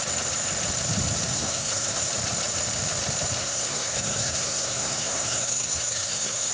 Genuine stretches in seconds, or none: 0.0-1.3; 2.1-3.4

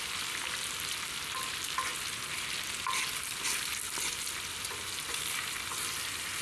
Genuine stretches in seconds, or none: 0.0-6.4

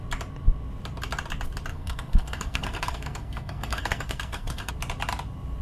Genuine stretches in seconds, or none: 0.0-1.7; 4.7-5.6

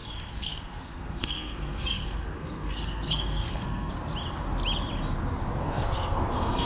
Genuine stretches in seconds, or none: 3.9-5.6

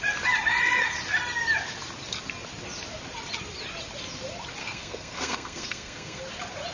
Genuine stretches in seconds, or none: 0.0-4.6; 6.2-6.7

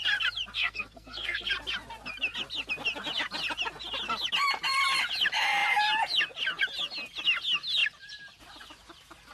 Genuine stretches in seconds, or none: 0.0-0.6; 1.5-9.3

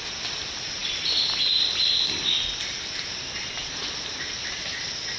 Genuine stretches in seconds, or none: 0.0-5.2

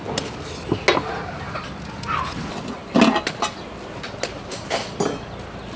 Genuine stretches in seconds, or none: 0.0-5.8